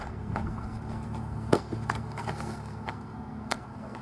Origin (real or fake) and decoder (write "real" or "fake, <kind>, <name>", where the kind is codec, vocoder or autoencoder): fake, codec, SNAC